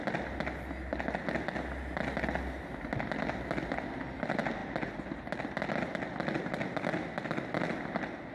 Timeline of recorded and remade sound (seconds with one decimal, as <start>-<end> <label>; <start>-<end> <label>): 0.0-8.3 recorded